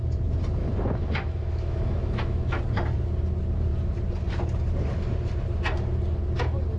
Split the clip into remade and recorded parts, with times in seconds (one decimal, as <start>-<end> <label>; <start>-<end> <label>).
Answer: 0.0-0.6 recorded; 0.6-2.6 remade; 2.6-6.8 recorded